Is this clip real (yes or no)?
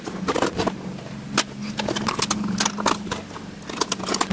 yes